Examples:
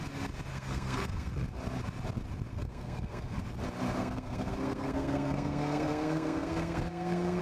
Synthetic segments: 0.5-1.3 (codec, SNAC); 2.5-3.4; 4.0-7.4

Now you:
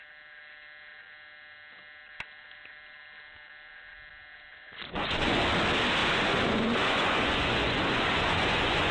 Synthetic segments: 4.5-5.4 (vocoder, Vocos); 6.0-8.9